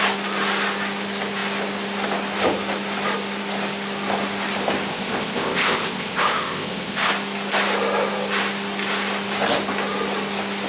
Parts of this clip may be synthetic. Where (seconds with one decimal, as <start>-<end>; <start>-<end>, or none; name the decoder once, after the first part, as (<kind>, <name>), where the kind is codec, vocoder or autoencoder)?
4.9-7.1 (codec, ZipCodec)